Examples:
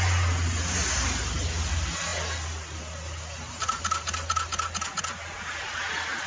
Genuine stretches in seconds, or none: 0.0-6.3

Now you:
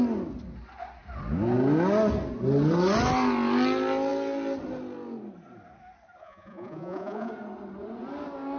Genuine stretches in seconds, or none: 0.0-6.2; 7.3-8.6